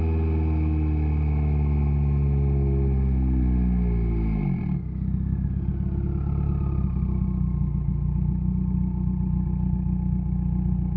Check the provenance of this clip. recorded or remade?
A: recorded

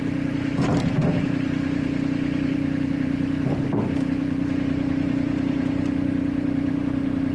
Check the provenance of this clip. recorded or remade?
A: remade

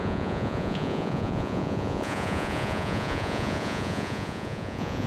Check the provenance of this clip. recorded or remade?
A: remade